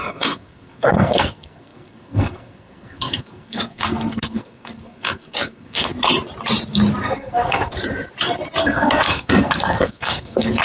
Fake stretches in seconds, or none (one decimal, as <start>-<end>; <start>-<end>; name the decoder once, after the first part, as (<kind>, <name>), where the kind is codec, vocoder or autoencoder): 0.0-5.9 (codec, SNAC); 7.0-7.8; 8.6-10.6